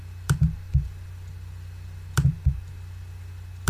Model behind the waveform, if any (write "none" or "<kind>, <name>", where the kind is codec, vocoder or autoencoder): none